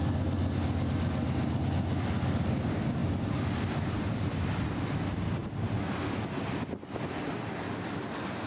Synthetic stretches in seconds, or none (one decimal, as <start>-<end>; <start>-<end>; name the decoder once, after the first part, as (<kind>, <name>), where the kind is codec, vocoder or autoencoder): 3.0-4.7 (vocoder, BigVGAN v2)